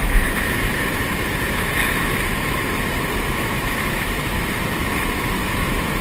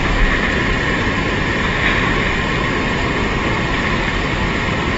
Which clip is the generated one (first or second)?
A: first